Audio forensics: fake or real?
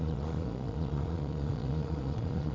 fake